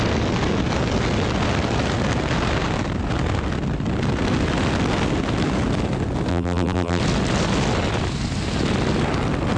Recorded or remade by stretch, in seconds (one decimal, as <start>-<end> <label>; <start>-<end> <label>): 0.0-6.3 recorded; 6.3-7.0 remade; 7.0-9.6 recorded